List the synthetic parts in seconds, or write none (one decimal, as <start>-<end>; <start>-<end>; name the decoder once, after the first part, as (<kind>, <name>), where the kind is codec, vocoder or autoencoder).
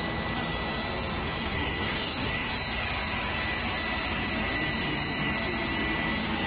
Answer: 1.4-2.5 (codec, SNAC)